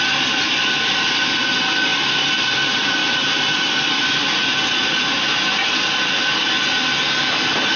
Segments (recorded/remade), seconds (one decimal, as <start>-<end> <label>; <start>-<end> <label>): 0.0-7.8 recorded